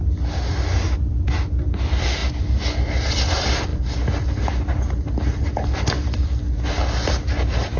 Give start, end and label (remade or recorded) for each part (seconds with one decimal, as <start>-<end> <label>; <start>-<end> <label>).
0.0-7.8 recorded